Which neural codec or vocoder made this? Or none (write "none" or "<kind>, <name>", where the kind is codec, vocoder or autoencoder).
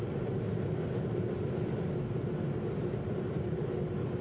none